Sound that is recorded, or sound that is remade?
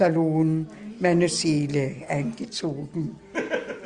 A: recorded